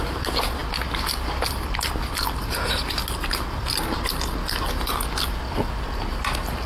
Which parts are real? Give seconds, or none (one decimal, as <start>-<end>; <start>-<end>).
0.0-6.7